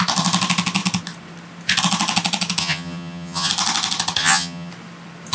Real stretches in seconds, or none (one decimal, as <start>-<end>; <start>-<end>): 0.0-2.6; 3.5-4.2; 4.7-5.3